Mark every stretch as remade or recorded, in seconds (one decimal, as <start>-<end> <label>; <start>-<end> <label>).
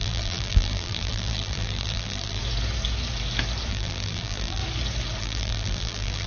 0.0-2.4 remade; 2.4-3.7 recorded; 3.7-4.6 remade; 4.6-5.2 recorded; 5.2-6.3 remade